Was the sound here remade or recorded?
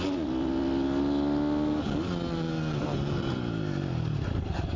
recorded